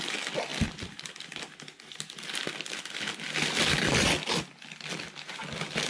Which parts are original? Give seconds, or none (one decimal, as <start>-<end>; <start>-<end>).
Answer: 0.0-5.9